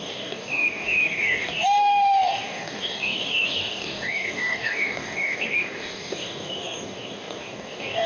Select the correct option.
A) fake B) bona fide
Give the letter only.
A